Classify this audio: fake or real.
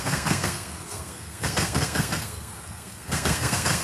fake